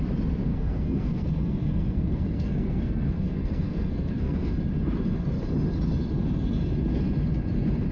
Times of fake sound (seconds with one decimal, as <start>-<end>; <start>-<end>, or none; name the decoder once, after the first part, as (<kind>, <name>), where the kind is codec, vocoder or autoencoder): 0.5-4.5 (codec, SNAC)